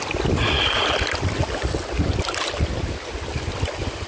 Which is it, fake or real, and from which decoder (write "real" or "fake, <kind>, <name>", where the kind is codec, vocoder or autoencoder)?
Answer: real